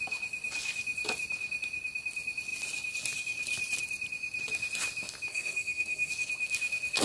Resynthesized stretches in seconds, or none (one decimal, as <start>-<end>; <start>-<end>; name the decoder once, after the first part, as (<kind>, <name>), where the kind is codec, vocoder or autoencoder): 5.3-6.1 (codec, SNAC)